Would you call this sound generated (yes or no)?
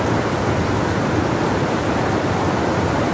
yes